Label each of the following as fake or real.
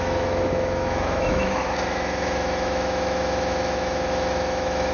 fake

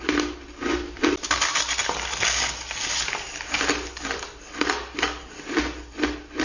real